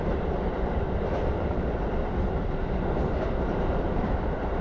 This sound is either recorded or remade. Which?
remade